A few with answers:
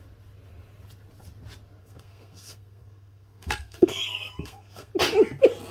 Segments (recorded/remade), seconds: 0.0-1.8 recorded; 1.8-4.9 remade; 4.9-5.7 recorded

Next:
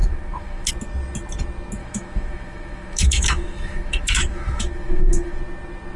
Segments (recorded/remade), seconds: 0.0-0.7 remade; 0.7-1.8 recorded; 1.8-5.4 remade; 5.4-6.0 recorded

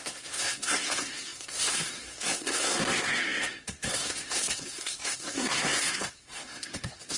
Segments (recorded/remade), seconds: 0.0-7.2 remade

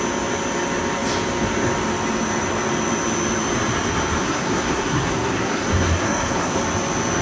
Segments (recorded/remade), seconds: 0.0-4.2 recorded; 4.2-6.6 remade; 6.6-7.2 recorded